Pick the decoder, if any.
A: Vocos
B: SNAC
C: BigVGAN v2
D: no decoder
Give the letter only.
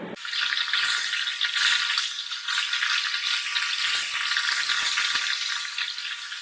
D